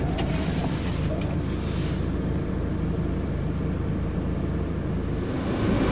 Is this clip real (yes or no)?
yes